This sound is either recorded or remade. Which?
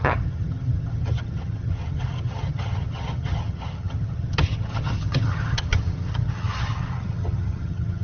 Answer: remade